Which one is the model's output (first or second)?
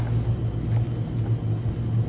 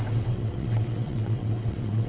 second